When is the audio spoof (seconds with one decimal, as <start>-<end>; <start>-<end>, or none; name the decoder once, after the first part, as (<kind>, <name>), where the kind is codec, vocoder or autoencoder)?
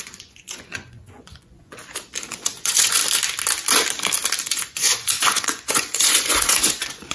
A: 0.0-1.8 (vocoder, Vocos); 2.3-3.0; 4.4-7.1